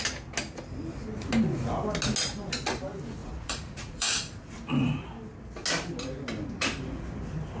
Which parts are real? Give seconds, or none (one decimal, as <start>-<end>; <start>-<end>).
0.0-3.2; 4.5-7.6